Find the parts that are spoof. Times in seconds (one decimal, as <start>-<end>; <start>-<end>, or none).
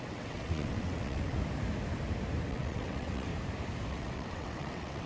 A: 0.0-1.4; 2.5-3.3; 3.9-5.1